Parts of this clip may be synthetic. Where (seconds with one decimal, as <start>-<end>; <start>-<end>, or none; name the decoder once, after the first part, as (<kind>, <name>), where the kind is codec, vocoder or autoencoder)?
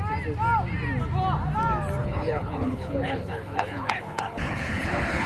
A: 2.0-5.3 (codec, HILCodec)